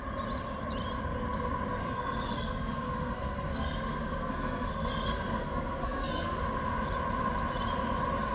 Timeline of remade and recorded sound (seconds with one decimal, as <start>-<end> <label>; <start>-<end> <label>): 0.0-1.8 recorded; 1.8-6.4 remade; 6.4-8.3 recorded